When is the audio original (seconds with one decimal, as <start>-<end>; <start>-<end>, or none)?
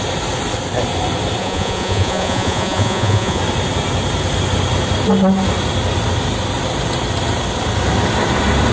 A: 0.0-1.4; 3.4-8.7